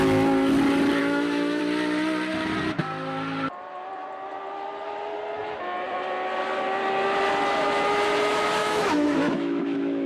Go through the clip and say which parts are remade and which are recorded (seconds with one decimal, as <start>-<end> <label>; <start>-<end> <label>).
0.0-1.0 recorded; 1.0-1.6 remade; 1.6-8.6 recorded; 8.6-10.1 remade